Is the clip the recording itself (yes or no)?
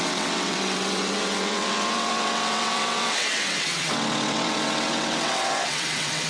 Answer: no